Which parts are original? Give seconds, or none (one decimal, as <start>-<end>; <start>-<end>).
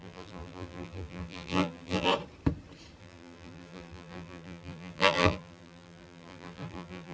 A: 2.1-3.0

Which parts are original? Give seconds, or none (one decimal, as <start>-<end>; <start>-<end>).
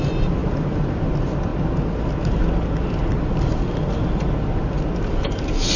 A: 0.0-5.8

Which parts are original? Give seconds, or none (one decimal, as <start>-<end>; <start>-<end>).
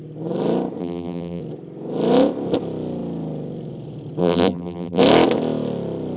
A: 0.0-0.8; 1.4-4.2; 5.0-6.2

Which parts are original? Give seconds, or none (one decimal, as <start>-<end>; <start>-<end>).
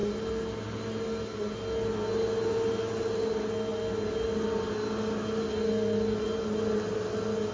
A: 0.0-7.5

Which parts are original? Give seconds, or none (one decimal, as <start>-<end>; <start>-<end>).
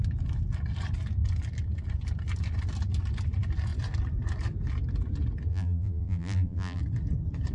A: 0.0-5.5; 6.8-7.5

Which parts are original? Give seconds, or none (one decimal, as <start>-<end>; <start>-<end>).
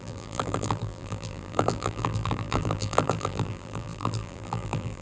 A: none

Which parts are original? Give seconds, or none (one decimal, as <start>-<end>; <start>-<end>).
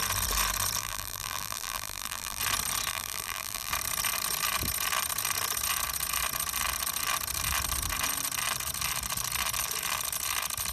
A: 0.0-0.8; 2.4-2.9; 3.7-10.7